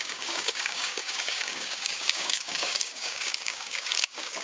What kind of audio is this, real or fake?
fake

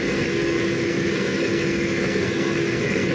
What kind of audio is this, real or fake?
fake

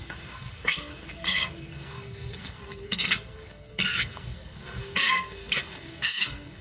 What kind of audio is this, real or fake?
fake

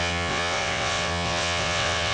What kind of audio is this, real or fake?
fake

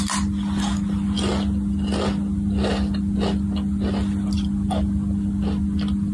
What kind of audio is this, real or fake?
real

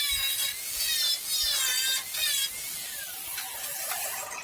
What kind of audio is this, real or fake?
real